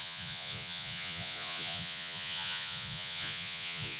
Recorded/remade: remade